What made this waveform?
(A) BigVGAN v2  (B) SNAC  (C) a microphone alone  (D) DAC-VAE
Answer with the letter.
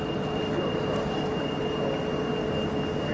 C